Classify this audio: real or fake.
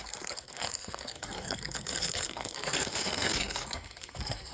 fake